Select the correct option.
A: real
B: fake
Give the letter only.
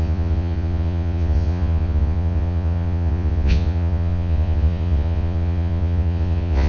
B